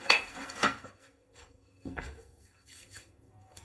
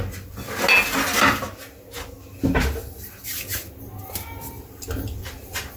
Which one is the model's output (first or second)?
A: first